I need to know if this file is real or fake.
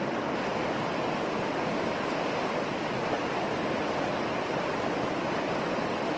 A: real